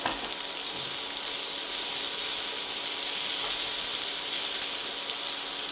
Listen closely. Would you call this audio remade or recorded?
recorded